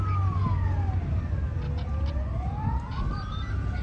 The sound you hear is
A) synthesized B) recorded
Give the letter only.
B